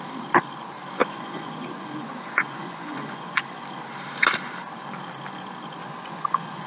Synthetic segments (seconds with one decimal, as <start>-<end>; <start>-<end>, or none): 1.0-3.6; 5.8-6.7